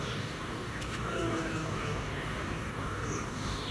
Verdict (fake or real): fake